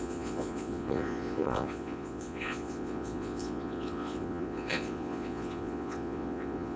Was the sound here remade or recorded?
remade